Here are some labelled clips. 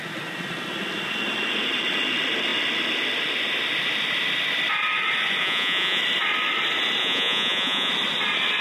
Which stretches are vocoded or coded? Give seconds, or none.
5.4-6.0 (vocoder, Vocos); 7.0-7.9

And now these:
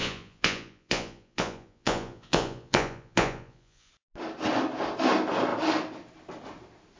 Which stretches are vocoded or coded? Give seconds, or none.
0.0-3.9 (vocoder, Vocos)